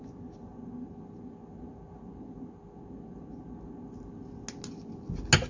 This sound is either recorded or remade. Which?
recorded